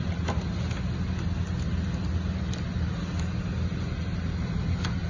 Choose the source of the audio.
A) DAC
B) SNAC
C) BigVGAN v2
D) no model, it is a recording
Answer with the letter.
D